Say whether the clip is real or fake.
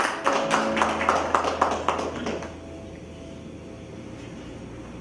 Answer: real